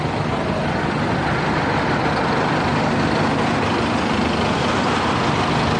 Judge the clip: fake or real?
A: real